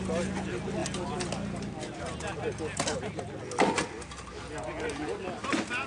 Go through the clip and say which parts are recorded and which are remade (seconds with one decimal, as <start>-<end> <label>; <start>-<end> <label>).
0.0-5.9 recorded